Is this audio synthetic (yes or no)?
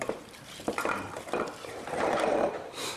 yes